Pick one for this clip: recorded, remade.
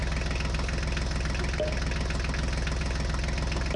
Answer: recorded